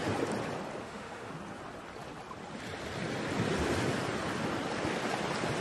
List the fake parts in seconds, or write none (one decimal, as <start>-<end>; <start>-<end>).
0.8-1.3